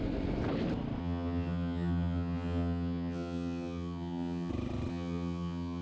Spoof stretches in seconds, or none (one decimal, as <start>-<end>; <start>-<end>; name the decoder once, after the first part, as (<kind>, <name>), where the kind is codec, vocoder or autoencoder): 1.0-4.5 (vocoder, HiFi-GAN); 4.9-5.8